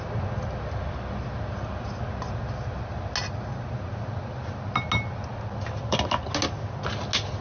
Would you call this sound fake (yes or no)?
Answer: no